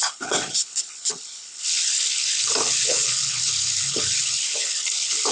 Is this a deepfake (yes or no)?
yes